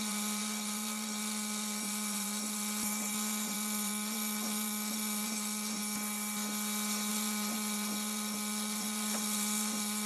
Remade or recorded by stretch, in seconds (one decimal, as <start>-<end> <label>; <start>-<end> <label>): 0.0-5.8 remade; 5.8-7.1 recorded; 7.1-10.1 remade